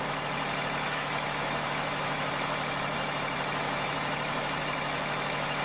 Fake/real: fake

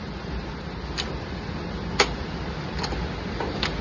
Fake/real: real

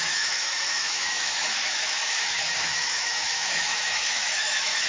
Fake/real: fake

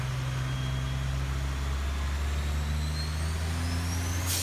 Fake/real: real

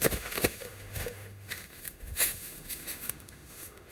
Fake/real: fake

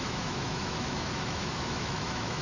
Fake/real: fake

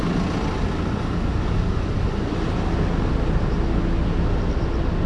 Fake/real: real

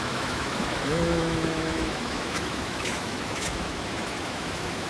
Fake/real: fake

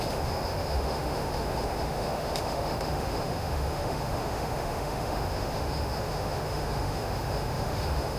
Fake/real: fake